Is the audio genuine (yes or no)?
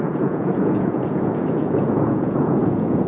no